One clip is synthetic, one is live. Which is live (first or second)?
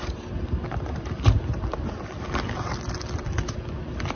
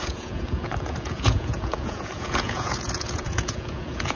first